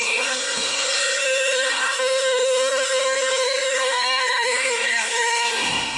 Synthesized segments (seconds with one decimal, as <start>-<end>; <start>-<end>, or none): 0.0-6.0